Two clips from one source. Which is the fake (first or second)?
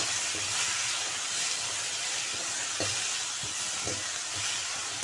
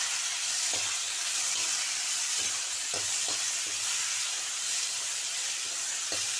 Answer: second